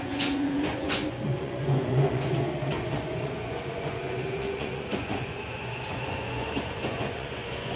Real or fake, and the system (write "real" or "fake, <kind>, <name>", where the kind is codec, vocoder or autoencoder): fake, vocoder, Vocos